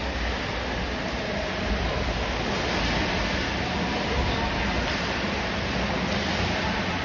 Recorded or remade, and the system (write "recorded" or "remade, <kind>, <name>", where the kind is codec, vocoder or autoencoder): recorded